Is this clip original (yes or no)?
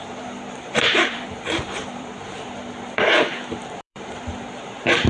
no